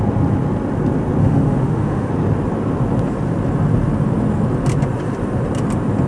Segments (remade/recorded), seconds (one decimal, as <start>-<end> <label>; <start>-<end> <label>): 0.0-1.2 recorded; 1.2-2.1 remade; 2.1-6.1 recorded